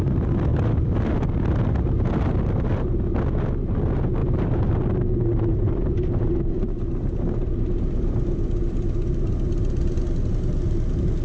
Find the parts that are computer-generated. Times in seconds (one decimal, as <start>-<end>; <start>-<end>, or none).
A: 4.2-4.7; 5.5-6.5